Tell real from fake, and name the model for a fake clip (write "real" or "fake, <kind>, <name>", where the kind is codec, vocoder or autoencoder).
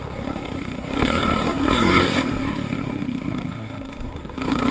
fake, codec, SNAC